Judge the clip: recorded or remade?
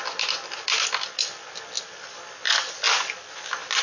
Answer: recorded